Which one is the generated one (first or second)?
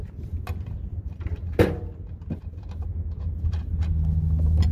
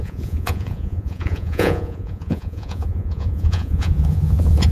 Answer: second